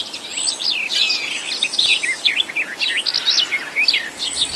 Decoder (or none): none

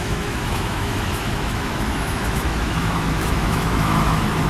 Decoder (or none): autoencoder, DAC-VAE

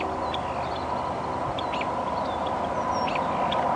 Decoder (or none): none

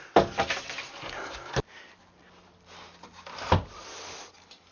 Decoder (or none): none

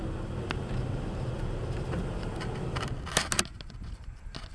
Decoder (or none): none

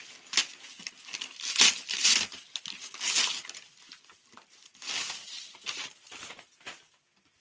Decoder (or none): none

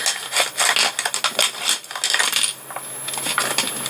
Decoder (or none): none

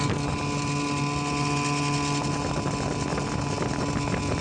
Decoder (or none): none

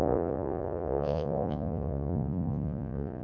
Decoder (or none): vocoder, Vocos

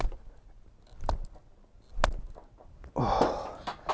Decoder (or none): none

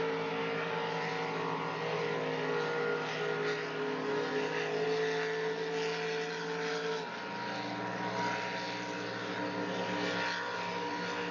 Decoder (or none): none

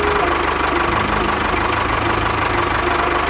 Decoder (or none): none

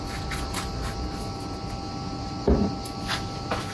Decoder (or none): none